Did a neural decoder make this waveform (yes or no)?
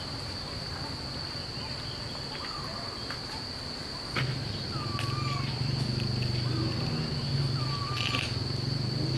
no